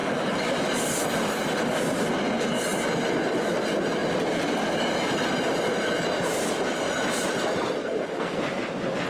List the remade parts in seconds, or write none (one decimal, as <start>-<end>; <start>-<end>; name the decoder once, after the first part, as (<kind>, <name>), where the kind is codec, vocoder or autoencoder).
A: 7.8-8.4 (codec, SNAC)